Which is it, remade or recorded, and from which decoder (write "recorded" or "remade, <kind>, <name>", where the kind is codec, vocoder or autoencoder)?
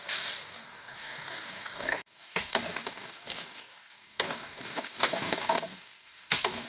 remade, codec, DAC